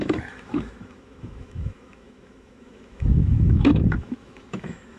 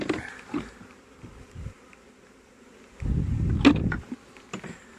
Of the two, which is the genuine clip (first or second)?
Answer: second